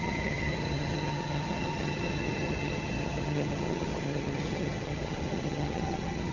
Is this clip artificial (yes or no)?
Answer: yes